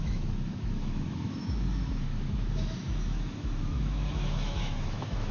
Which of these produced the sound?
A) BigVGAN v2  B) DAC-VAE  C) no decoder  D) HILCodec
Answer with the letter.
B